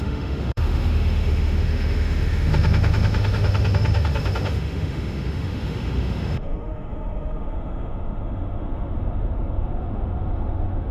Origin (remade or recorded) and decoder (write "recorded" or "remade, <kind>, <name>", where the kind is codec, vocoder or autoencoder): remade, autoencoder, DAC-VAE